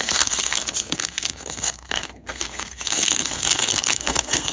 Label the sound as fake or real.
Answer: fake